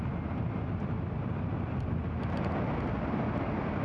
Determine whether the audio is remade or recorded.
recorded